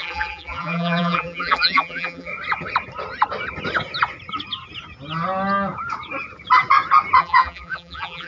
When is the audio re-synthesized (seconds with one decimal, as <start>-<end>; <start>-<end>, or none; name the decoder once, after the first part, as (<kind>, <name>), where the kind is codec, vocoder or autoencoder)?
0.0-2.3 (vocoder, BigVGAN v2); 7.2-8.3